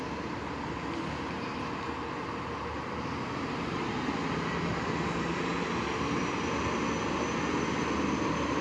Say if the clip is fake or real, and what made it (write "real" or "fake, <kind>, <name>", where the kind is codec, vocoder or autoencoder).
real